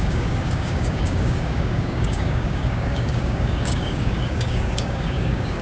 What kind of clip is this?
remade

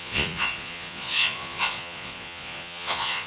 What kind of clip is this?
remade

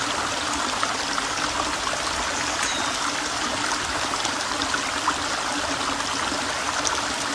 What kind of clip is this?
recorded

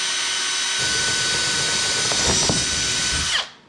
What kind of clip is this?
recorded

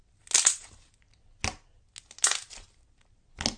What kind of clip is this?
recorded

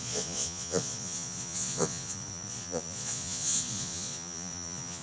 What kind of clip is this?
remade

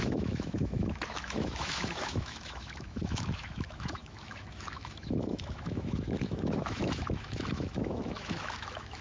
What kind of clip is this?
remade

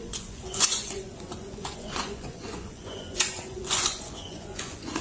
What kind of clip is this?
remade